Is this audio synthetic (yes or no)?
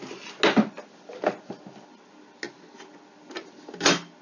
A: no